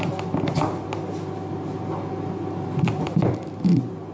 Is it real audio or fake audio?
real